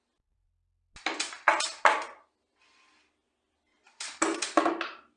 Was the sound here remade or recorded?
recorded